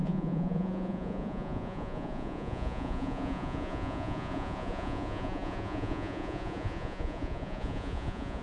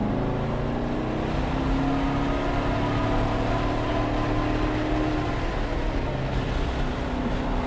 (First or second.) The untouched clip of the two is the second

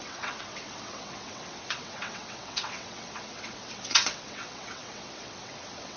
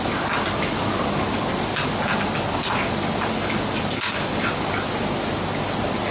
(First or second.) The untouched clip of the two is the second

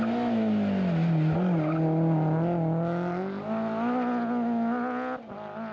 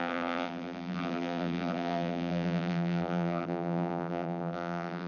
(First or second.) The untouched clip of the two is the first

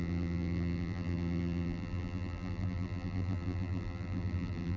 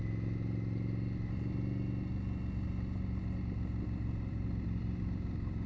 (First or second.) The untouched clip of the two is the second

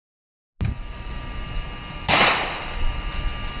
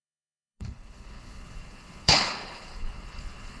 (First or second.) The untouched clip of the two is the first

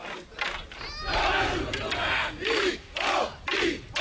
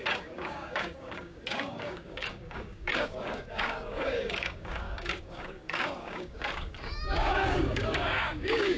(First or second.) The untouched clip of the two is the first